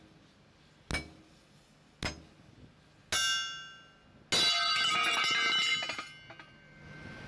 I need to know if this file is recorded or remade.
recorded